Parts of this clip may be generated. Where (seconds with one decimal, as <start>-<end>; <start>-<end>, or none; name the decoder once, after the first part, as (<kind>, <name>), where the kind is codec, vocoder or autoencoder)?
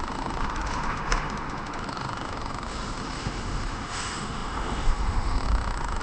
0.0-6.0 (autoencoder, DAC-VAE)